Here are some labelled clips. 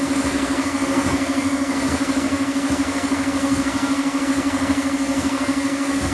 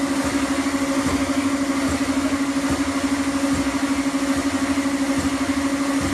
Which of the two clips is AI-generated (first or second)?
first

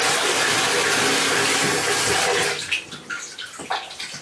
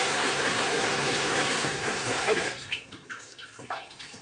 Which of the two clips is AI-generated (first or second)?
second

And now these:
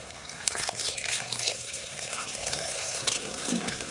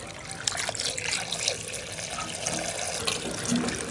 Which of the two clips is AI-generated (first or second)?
first